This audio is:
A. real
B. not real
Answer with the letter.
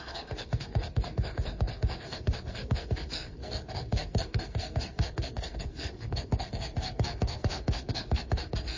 B